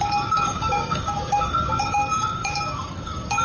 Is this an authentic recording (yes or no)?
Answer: no